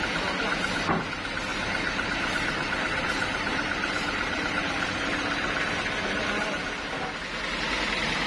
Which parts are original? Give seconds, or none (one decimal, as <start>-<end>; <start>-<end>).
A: 0.0-1.5; 5.6-8.3